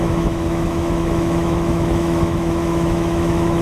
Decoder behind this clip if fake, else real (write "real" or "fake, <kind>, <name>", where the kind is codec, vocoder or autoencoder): fake, autoencoder, DAC-VAE